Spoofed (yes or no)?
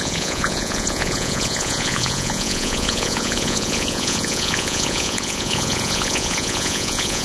yes